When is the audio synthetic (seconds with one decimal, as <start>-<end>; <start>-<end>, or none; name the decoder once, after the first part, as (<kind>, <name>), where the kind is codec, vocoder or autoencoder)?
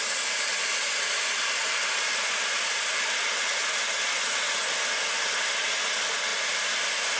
none